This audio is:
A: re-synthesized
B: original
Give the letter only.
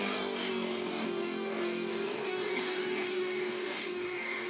A